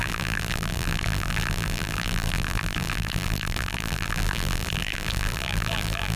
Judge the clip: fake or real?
fake